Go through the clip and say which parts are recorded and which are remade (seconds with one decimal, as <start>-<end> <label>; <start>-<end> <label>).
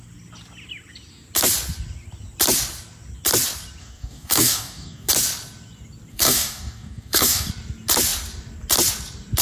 0.0-3.8 recorded; 3.8-5.1 remade; 5.1-6.1 recorded; 6.1-7.5 remade; 7.5-9.4 recorded